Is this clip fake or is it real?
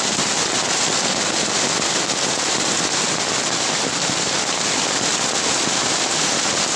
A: real